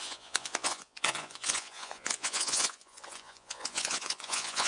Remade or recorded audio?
remade